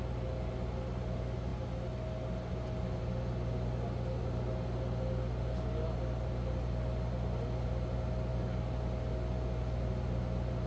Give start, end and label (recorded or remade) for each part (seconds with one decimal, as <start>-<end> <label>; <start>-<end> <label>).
0.0-10.7 recorded